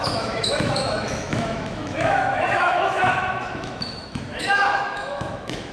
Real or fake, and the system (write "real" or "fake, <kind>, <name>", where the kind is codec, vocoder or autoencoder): fake, autoencoder, DAC-VAE